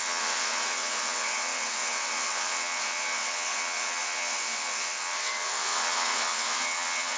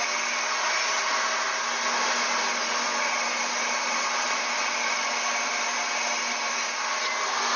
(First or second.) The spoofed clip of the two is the first